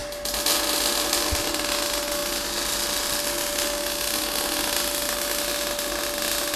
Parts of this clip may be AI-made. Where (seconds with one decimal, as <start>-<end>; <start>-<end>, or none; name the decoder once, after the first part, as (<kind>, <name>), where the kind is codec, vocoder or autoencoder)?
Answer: none